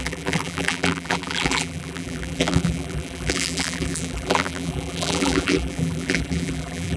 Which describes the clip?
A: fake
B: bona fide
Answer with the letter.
A